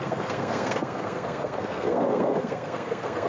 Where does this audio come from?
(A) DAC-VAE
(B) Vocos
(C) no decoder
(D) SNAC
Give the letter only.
D